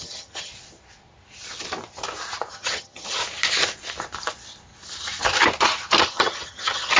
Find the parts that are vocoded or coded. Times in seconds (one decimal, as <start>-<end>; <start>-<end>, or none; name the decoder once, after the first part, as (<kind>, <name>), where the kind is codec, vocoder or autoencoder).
0.0-0.5 (vocoder, HiFi-GAN); 2.5-3.2; 6.0-7.0